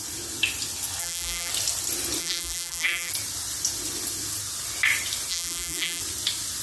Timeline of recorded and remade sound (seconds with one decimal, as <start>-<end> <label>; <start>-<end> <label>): 0.0-1.0 recorded; 1.0-1.5 remade; 1.5-2.2 recorded; 2.2-3.1 remade; 3.1-5.3 recorded; 5.3-6.0 remade; 6.0-6.6 recorded